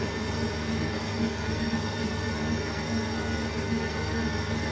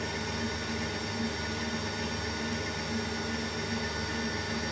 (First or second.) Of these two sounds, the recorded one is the second